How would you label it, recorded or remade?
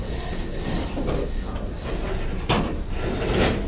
recorded